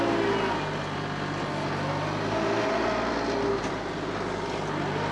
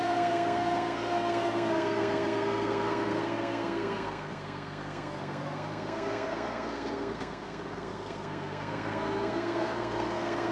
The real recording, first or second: first